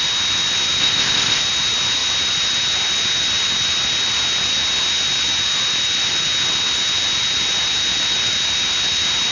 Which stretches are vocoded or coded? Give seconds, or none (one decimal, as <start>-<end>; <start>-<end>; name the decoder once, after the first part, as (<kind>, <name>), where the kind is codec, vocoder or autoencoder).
0.8-1.4 (codec, ZipCodec)